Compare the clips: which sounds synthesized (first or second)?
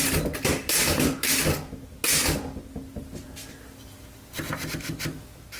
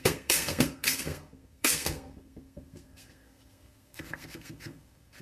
second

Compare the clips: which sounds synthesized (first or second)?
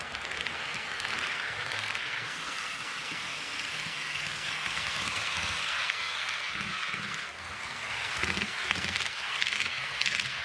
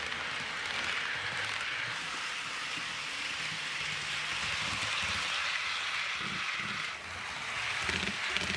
first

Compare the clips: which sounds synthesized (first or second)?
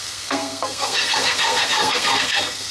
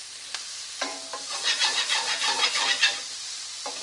first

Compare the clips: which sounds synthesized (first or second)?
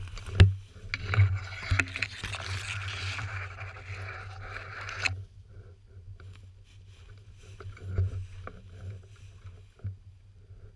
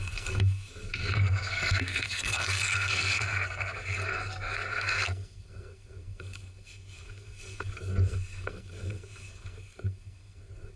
second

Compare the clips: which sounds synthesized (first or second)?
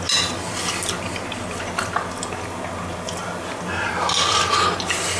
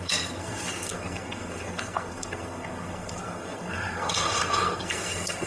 second